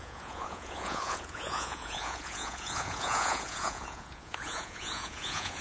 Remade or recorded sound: remade